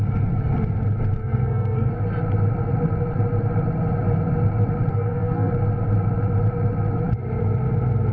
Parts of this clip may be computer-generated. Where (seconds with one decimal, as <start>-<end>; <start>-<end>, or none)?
1.2-1.9; 4.9-5.5